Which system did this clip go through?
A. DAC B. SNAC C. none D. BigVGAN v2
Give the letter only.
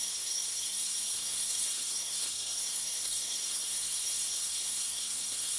B